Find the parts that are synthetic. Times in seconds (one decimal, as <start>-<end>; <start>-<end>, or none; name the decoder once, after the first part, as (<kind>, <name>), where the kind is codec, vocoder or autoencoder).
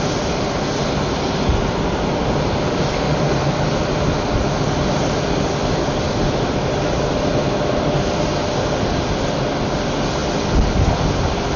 none